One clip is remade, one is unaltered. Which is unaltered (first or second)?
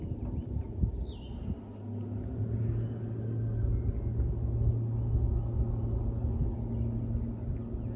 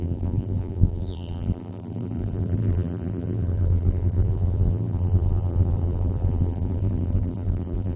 first